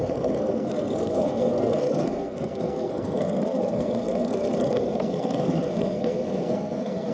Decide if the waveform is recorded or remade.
remade